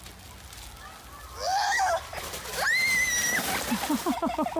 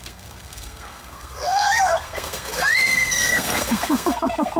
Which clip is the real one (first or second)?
first